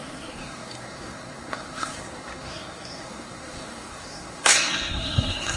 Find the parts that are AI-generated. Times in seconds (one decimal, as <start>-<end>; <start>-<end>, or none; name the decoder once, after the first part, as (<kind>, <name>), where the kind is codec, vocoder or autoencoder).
0.0-5.6 (codec, SNAC)